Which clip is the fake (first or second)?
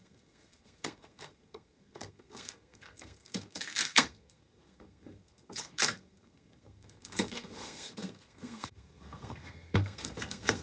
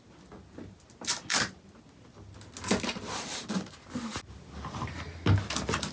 first